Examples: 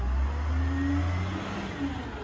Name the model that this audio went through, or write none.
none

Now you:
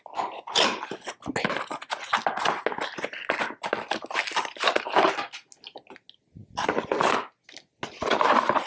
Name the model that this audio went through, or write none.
none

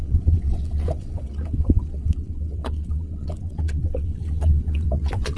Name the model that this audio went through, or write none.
vocoder, WaveNeXt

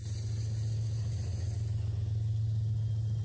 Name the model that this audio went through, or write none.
none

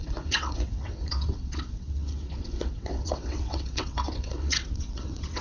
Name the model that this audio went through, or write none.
vocoder, WaveNeXt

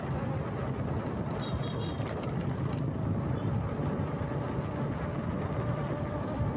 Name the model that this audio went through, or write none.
none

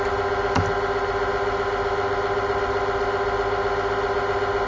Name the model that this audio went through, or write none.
none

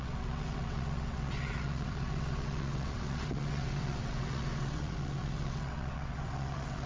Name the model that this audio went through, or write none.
vocoder, WaveNeXt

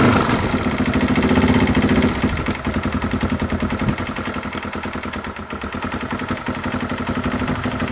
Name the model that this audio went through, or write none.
none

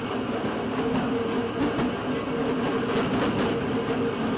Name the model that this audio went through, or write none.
none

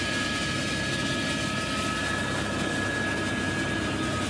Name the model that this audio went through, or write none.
none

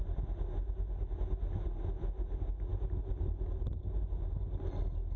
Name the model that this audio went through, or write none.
none